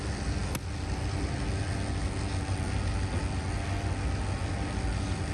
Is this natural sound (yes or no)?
yes